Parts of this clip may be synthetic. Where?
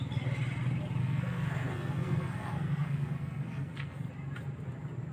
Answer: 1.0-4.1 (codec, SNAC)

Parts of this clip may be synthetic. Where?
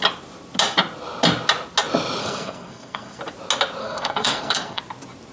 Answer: 2.2-3.2 (codec, SNAC); 3.8-4.8